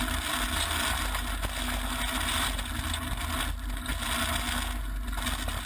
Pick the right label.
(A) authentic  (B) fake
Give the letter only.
A